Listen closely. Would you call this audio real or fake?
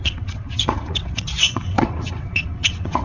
fake